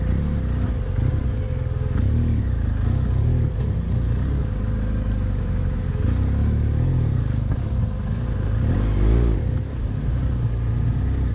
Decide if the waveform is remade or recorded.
recorded